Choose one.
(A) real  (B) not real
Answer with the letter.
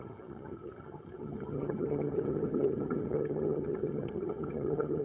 B